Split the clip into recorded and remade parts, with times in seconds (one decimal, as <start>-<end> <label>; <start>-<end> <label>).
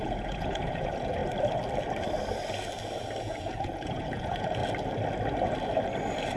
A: 0.0-1.2 remade; 1.2-3.2 recorded; 3.2-4.6 remade; 4.6-6.4 recorded